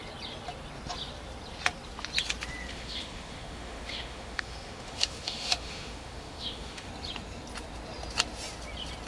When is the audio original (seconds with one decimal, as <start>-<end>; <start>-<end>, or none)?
0.0-2.7; 6.9-9.1